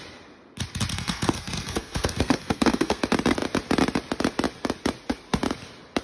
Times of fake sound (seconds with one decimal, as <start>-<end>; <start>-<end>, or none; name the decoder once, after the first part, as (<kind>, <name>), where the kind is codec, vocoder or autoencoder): 0.9-3.0 (codec, SNAC)